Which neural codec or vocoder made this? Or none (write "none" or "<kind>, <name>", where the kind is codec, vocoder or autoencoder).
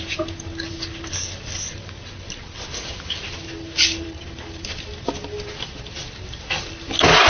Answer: none